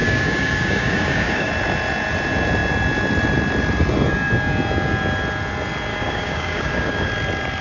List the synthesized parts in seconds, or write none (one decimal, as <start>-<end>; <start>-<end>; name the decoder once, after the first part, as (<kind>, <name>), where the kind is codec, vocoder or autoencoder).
0.0-1.5 (codec, DAC); 5.9-7.1